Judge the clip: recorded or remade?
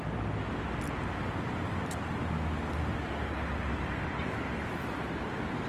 recorded